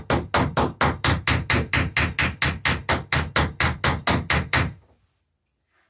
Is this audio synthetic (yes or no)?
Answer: no